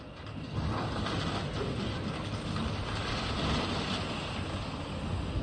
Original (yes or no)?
yes